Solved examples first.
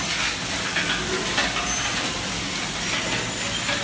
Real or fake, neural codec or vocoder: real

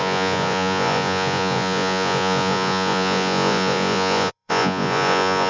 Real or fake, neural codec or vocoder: fake, vocoder, Vocos